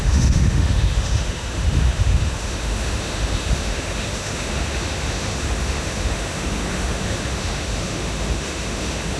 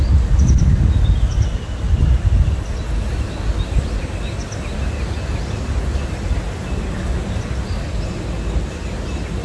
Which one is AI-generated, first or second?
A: first